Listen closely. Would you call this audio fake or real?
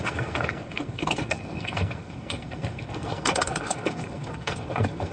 fake